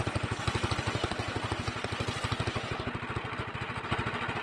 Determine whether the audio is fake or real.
real